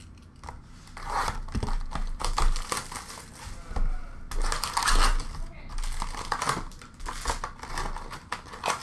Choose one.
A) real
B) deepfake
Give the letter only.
A